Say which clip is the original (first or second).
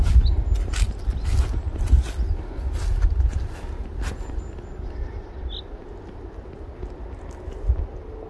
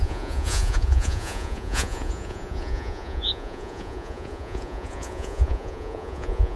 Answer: first